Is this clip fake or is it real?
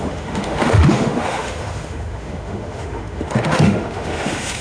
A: fake